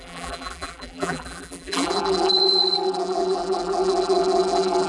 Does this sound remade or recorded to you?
remade